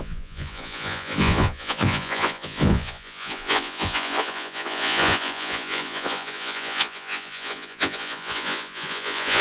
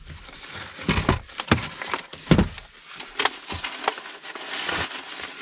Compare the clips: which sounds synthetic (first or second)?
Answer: first